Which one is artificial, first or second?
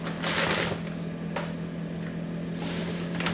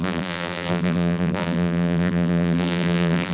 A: second